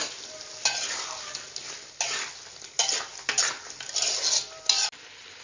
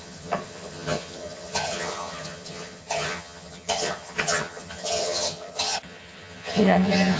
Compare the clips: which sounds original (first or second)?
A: first